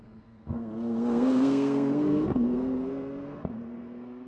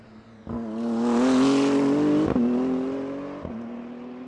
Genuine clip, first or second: second